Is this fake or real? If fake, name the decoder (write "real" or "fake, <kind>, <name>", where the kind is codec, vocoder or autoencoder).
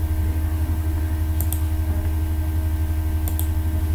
real